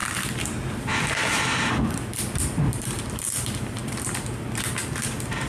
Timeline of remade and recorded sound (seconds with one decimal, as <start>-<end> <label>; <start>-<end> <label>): 0.0-0.7 recorded; 0.7-5.5 remade